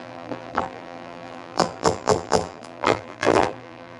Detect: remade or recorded remade